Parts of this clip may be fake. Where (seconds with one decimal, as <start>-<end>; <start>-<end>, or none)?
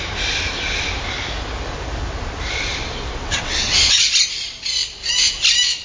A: 3.2-4.1